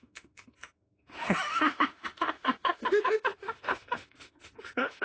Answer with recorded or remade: remade